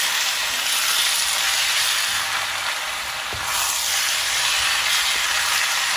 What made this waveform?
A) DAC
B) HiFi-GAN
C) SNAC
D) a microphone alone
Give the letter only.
D